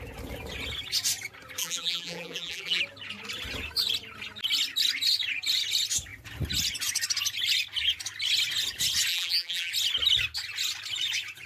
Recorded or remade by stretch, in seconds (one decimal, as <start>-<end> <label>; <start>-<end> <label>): 0.0-1.6 recorded; 1.6-2.8 remade; 2.8-9.1 recorded; 9.1-9.7 remade; 9.7-11.5 recorded